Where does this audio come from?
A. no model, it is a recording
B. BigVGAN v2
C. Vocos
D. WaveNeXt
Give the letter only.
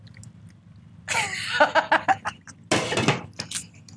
A